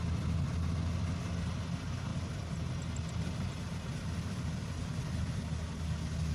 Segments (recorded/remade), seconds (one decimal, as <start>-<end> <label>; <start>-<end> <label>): 0.0-6.3 recorded